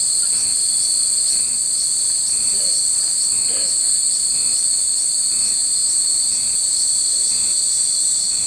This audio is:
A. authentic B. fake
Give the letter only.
A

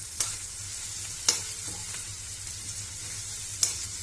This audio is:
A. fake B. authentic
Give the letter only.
B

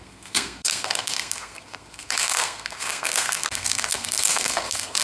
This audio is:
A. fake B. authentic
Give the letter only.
A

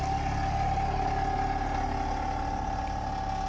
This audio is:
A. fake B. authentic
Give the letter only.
B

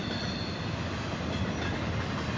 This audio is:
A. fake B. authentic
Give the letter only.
B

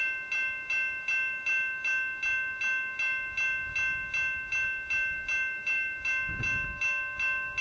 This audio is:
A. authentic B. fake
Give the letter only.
A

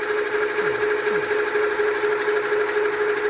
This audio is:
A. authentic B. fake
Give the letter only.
A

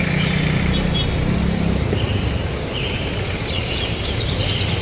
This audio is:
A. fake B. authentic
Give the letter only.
B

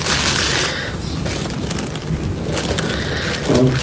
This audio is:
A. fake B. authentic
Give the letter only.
B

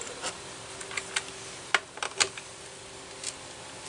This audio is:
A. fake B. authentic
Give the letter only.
B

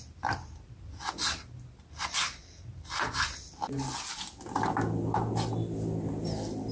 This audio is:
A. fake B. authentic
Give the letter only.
B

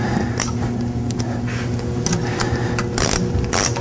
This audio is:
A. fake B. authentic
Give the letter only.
B